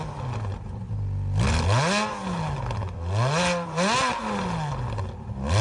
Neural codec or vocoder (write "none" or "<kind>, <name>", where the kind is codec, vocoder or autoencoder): none